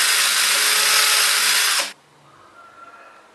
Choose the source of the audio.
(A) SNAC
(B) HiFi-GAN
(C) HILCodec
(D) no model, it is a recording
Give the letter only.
D